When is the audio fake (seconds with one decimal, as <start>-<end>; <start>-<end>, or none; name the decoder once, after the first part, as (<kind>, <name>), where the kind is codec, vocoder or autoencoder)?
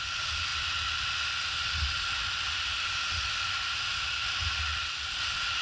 none